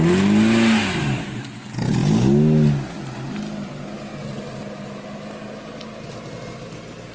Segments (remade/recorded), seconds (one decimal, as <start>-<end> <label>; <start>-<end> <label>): 0.0-7.1 recorded